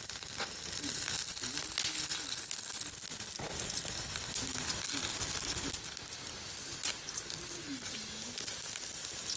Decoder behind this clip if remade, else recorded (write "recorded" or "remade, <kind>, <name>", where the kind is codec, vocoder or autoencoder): recorded